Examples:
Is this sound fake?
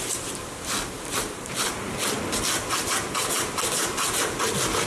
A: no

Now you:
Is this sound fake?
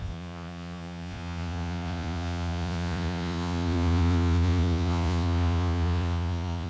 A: yes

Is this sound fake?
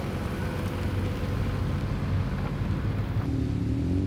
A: no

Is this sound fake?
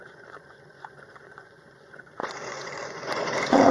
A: yes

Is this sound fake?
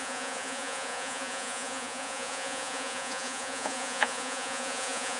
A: yes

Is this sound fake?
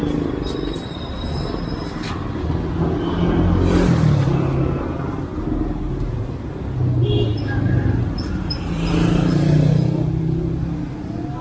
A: no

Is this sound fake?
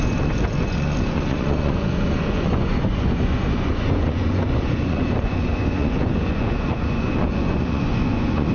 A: yes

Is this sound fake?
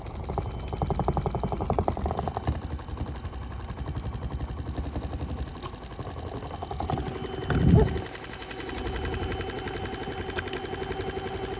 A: no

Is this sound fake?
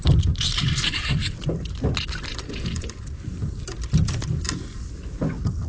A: no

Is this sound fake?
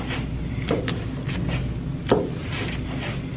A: no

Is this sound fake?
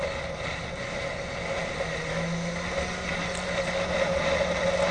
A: no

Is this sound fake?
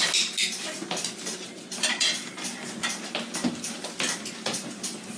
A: no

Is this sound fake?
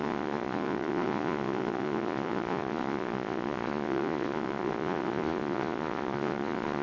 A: yes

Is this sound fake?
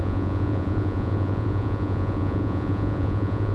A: yes